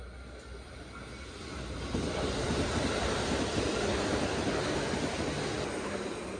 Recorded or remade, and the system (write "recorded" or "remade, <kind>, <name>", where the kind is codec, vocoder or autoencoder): recorded